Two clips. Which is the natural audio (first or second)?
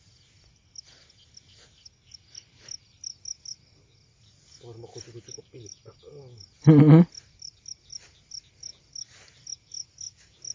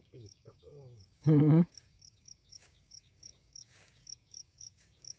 first